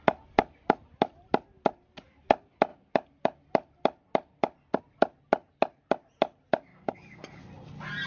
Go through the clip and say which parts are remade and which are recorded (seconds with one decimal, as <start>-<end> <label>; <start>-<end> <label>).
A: 0.0-6.7 recorded; 6.7-7.4 remade; 7.4-8.1 recorded